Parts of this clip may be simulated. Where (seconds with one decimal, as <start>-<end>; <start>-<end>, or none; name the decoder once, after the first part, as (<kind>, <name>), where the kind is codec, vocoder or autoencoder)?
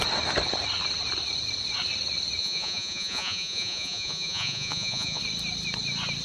2.4-5.2 (vocoder, Vocos)